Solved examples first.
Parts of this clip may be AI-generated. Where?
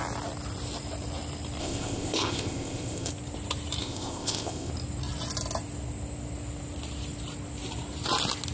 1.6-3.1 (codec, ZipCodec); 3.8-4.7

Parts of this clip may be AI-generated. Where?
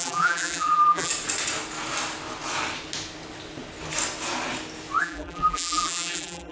0.0-1.1 (vocoder, BigVGAN v2); 5.0-6.5